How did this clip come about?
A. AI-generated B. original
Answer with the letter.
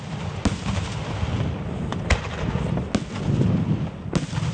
B